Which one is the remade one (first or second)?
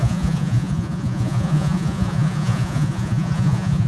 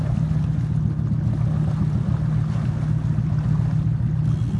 first